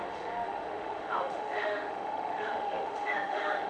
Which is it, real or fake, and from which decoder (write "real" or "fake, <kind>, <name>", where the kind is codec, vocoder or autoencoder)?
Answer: fake, autoencoder, DAC-VAE